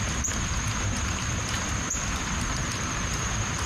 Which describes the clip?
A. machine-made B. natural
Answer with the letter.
B